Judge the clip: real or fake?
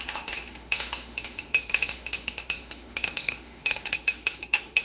fake